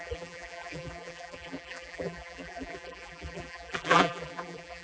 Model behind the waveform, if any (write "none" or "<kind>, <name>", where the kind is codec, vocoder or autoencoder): vocoder, BigVGAN v2